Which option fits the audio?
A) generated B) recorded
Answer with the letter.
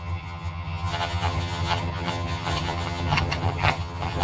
A